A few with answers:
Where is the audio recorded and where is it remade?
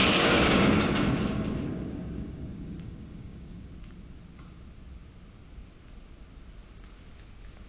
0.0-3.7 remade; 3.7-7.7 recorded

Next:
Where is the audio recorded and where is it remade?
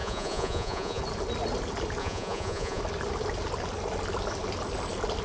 0.0-1.0 remade; 1.0-2.0 recorded; 2.0-2.8 remade; 2.8-5.2 recorded